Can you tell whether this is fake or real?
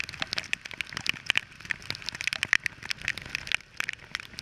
real